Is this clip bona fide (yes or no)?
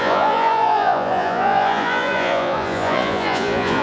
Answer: no